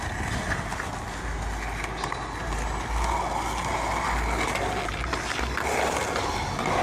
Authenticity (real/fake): real